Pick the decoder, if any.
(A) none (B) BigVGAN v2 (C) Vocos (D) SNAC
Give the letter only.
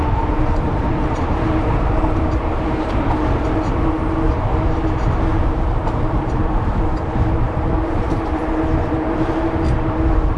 B